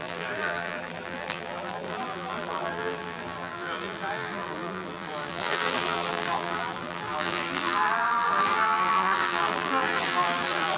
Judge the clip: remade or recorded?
remade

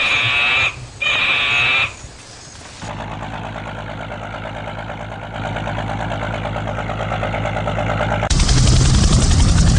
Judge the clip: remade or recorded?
recorded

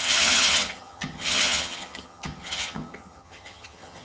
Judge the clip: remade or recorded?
remade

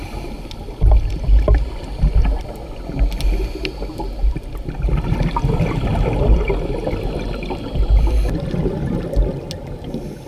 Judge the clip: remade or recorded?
recorded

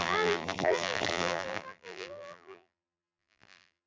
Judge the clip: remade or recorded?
remade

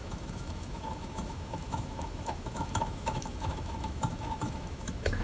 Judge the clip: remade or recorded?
remade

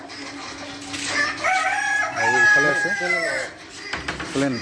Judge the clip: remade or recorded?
recorded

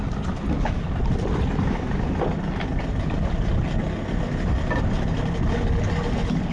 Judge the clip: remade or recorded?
recorded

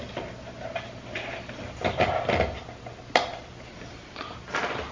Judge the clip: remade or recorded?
recorded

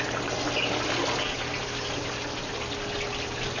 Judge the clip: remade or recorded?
recorded